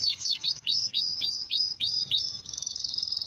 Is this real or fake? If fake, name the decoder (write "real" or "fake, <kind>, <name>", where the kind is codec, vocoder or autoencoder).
fake, codec, SNAC